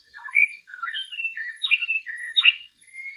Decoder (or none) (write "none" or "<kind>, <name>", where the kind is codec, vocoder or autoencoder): codec, SNAC